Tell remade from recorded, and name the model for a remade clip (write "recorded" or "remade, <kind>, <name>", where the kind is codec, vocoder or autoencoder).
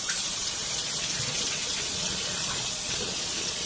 remade, vocoder, Vocos